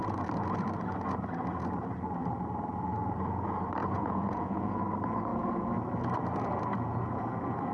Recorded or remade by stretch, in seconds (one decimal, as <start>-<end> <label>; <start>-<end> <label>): 0.0-3.8 recorded; 3.8-4.8 remade; 4.8-7.7 recorded